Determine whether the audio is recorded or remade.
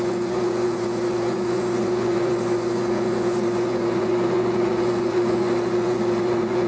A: remade